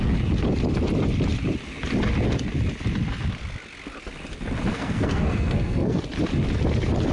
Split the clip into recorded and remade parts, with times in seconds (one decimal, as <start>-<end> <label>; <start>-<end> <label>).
0.0-4.7 recorded; 4.7-6.0 remade; 6.0-7.1 recorded